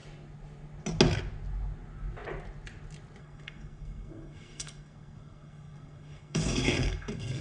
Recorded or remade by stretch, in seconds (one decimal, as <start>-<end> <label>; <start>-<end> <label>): 0.0-3.2 recorded; 3.2-7.4 remade